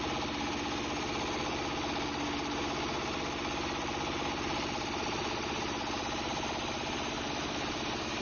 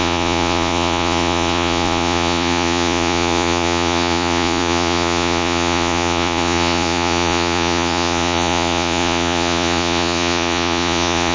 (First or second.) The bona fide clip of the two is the first